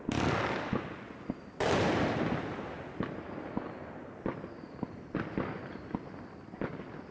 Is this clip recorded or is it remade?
recorded